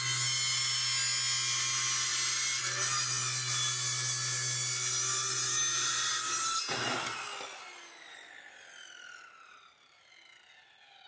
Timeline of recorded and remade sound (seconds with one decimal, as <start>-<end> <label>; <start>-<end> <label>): 0.0-11.1 recorded